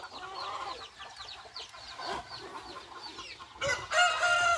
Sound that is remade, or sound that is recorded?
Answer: recorded